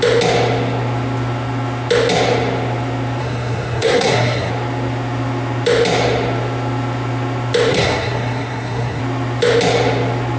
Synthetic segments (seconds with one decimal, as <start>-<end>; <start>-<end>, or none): 3.2-4.5; 7.7-9.0